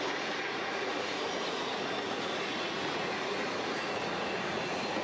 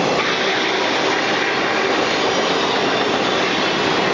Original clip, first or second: second